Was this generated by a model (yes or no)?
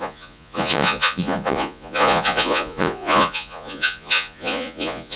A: yes